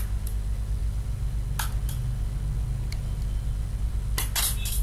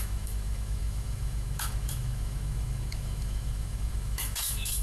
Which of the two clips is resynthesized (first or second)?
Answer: second